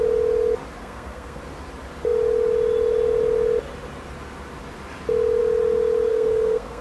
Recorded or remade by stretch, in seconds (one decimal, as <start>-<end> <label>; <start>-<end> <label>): 0.0-0.8 recorded; 0.8-1.4 remade; 1.4-6.1 recorded; 6.1-6.8 remade